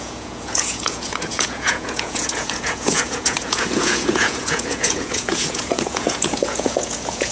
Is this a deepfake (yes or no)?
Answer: yes